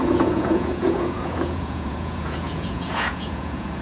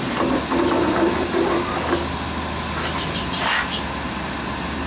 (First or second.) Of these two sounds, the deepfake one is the first